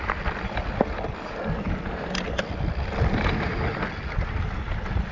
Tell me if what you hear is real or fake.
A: real